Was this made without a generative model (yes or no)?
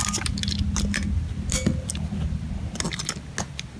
yes